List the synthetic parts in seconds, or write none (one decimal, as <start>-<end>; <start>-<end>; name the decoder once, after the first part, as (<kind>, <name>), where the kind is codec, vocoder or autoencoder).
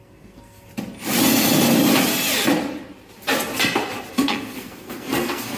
0.0-0.7 (codec, SNAC); 4.1-5.6